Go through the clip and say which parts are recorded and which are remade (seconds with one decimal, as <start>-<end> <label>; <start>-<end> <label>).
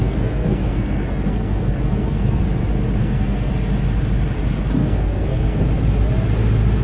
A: 0.0-2.4 remade; 2.4-3.0 recorded; 3.0-3.5 remade; 3.5-4.8 recorded; 4.8-5.6 remade; 5.6-6.8 recorded